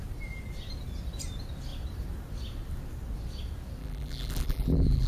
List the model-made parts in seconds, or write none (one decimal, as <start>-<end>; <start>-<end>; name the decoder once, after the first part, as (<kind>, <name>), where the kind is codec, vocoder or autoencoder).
3.8-5.1 (vocoder, BigVGAN v2)